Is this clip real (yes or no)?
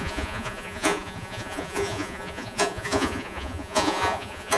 no